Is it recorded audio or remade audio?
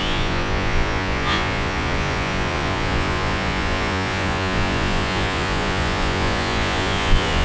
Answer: remade